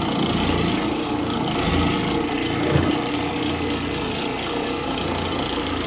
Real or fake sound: real